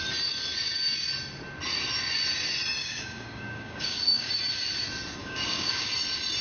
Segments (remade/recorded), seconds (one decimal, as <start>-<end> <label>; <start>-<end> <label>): 0.0-2.8 recorded; 2.8-4.3 remade; 4.3-5.2 recorded; 5.2-5.9 remade; 5.9-6.4 recorded